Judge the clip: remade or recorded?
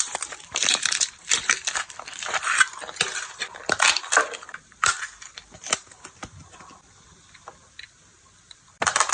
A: remade